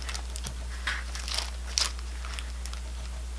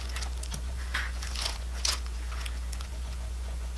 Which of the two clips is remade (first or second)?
second